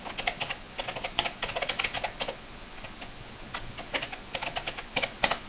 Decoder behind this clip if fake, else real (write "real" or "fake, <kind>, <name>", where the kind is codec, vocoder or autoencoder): fake, vocoder, Vocos